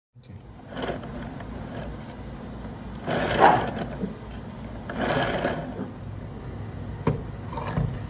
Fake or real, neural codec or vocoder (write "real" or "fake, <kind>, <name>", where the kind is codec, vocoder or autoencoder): real